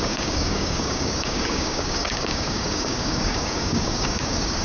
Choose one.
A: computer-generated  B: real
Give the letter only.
A